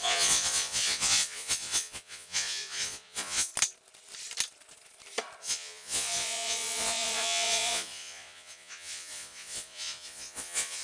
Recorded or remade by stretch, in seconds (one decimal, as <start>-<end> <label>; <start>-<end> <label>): 0.0-3.5 remade; 3.5-5.4 recorded; 5.4-10.8 remade